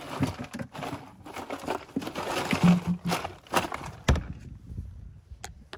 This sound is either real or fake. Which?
real